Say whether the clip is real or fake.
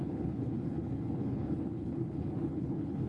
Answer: fake